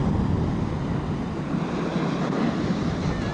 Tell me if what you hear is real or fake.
real